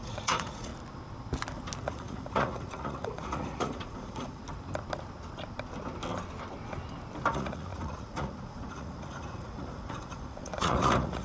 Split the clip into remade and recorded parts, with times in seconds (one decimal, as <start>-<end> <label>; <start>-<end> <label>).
0.0-0.7 remade; 0.7-1.8 recorded; 1.8-4.4 remade; 4.4-7.3 recorded; 7.3-11.2 remade